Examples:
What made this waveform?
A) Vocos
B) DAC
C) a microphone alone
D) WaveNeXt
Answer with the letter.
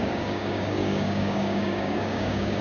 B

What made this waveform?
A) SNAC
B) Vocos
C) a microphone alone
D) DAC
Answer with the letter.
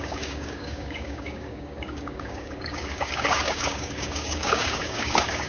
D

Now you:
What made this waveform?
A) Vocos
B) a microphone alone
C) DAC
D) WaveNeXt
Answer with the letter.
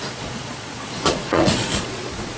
A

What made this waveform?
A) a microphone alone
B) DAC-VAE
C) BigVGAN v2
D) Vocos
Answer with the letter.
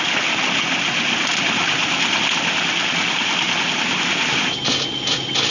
A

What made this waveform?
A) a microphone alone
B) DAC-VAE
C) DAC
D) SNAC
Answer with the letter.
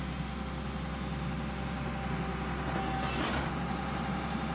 A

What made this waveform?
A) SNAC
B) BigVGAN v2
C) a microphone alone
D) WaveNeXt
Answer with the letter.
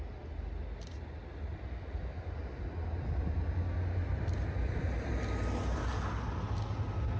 C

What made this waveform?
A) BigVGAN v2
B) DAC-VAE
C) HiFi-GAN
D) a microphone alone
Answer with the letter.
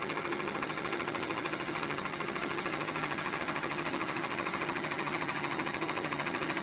C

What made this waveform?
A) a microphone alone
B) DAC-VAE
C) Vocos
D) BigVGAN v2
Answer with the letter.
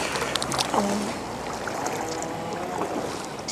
A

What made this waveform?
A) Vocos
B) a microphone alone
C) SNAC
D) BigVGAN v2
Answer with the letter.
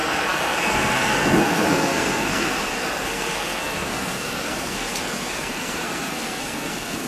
C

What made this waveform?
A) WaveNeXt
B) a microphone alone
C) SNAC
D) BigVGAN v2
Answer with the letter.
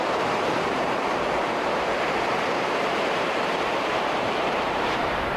D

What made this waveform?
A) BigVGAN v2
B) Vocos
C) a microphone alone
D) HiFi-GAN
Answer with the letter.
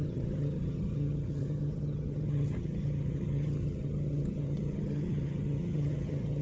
D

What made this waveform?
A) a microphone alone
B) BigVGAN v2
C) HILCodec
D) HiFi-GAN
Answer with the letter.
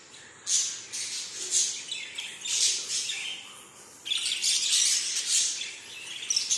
A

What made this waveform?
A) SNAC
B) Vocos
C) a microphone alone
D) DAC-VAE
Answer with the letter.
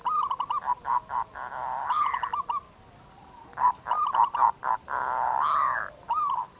C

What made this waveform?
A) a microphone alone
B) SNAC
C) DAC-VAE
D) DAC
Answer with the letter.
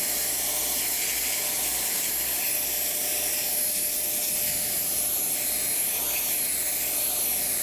A